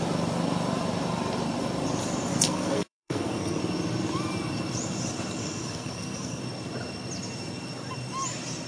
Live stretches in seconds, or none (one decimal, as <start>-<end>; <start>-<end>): 0.0-2.3; 3.6-5.4; 6.4-8.7